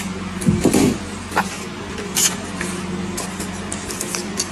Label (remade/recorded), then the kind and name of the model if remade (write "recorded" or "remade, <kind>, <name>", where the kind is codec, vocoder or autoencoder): recorded